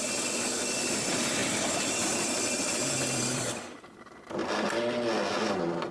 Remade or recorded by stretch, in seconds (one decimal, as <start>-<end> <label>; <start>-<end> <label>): 0.0-4.4 remade; 4.4-5.4 recorded; 5.4-5.9 remade